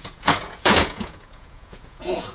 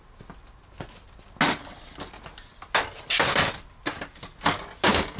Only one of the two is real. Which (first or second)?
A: second